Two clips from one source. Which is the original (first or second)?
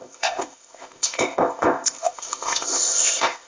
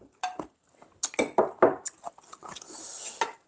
second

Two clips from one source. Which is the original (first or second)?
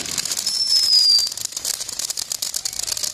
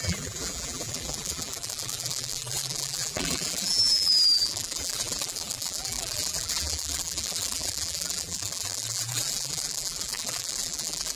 first